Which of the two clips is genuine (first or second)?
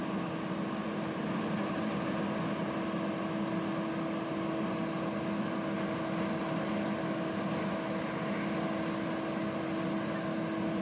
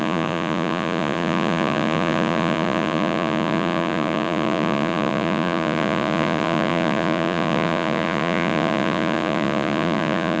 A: first